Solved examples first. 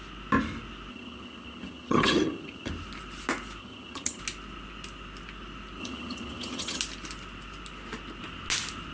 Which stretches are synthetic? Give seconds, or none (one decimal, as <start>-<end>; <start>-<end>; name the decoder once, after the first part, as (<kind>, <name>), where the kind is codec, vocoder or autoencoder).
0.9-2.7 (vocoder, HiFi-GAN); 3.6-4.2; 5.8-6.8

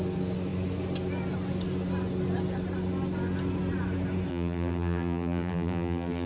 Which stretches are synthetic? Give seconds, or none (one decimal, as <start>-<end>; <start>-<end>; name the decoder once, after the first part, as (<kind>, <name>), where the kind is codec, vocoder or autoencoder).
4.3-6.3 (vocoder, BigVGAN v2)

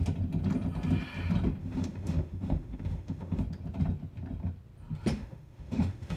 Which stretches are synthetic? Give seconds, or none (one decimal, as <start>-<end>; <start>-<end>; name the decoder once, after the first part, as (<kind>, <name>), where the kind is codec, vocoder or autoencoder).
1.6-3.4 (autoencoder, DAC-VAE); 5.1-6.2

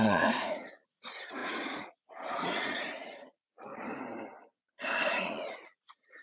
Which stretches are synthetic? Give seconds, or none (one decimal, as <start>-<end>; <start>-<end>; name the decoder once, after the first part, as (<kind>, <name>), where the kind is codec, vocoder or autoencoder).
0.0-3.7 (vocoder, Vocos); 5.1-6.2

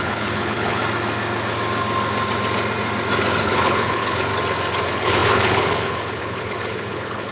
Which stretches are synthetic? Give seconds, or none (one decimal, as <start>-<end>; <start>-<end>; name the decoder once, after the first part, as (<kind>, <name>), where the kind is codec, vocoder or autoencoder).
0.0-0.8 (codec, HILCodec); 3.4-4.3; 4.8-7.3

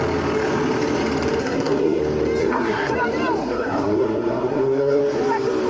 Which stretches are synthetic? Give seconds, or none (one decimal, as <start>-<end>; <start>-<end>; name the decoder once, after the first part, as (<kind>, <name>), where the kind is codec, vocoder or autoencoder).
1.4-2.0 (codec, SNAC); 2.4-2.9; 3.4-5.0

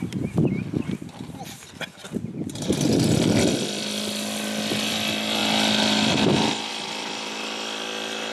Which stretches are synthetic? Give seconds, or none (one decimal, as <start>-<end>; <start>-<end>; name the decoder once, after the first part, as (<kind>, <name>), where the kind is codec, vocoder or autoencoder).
2.0-2.8 (vocoder, BigVGAN v2)

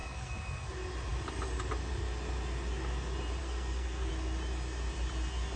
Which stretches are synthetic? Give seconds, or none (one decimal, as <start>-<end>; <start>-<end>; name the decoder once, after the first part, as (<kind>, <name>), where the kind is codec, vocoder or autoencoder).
0.0-0.7 (codec, SNAC); 3.4-4.1